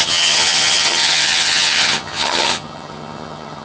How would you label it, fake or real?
fake